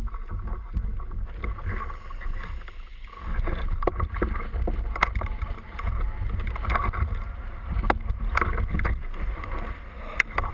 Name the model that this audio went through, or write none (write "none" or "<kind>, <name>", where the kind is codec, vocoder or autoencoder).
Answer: none